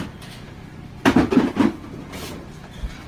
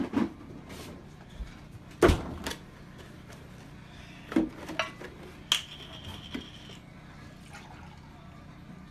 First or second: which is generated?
first